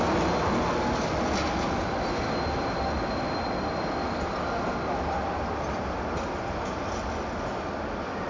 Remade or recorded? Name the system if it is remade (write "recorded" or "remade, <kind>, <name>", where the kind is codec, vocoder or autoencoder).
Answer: recorded